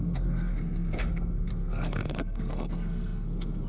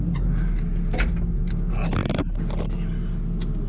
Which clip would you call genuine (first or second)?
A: second